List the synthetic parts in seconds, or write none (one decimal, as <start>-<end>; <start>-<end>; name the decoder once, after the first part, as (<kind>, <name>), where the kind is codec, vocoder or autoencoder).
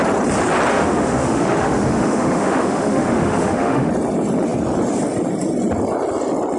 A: 0.7-3.9 (autoencoder, DAC-VAE)